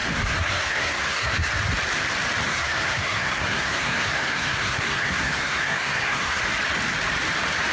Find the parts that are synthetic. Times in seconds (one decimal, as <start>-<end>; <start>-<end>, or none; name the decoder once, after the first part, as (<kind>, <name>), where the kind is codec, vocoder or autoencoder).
0.0-1.6 (codec, SNAC); 2.5-6.4